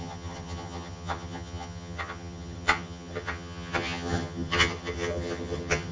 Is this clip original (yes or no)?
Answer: no